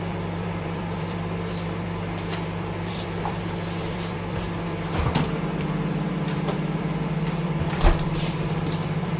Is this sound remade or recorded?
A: remade